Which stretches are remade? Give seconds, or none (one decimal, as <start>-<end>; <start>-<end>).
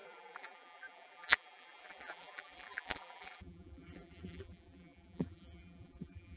0.0-6.4